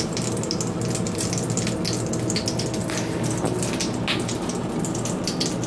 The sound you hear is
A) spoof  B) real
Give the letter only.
B